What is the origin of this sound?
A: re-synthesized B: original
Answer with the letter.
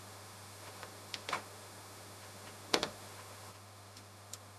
A